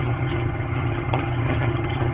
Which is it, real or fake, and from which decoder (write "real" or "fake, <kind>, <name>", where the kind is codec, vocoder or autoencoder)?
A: fake, vocoder, HiFi-GAN